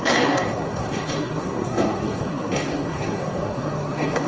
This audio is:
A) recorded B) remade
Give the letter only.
B